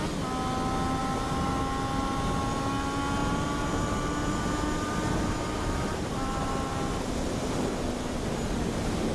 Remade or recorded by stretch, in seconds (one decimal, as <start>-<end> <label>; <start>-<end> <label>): 0.0-1.0 recorded; 1.0-1.6 remade; 1.6-2.0 recorded; 2.0-2.7 remade; 2.7-3.2 recorded; 3.2-6.5 remade; 6.5-9.1 recorded